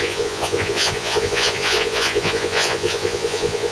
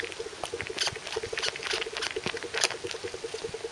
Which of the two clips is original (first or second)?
second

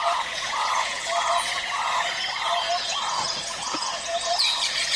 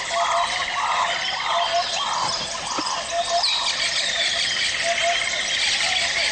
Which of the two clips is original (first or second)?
second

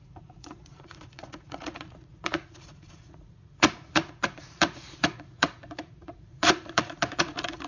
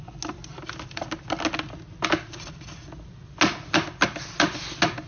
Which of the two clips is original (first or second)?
second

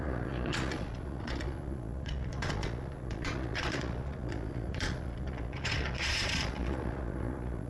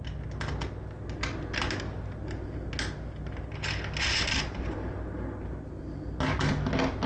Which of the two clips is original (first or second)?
second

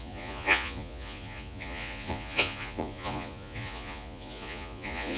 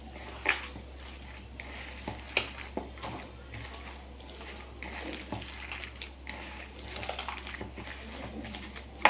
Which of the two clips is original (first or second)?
second